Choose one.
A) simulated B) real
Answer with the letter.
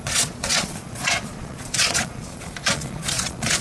A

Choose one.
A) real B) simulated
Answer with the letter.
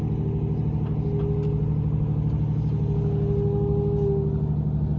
A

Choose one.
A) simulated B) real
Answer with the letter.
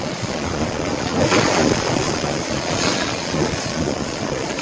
A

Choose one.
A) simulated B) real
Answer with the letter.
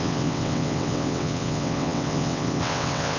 A